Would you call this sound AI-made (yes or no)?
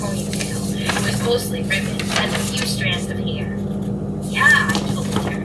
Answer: no